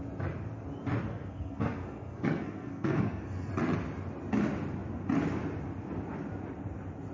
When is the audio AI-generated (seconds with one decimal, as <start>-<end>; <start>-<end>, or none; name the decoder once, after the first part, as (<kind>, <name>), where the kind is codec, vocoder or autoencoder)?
1.1-3.5 (codec, SNAC)